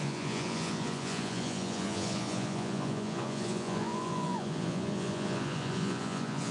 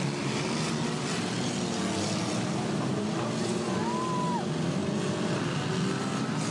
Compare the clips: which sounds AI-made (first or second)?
first